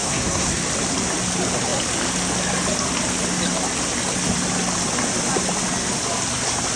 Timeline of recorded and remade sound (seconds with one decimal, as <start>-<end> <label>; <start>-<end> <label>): 0.0-0.6 remade; 0.6-6.8 recorded